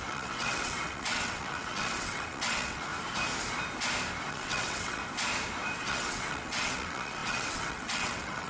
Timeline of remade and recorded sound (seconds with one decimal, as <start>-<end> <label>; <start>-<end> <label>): 0.0-2.9 remade; 2.9-4.3 recorded; 4.3-5.0 remade; 5.0-5.8 recorded; 5.8-8.5 remade